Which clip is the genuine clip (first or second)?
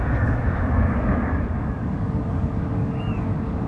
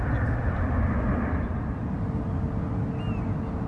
second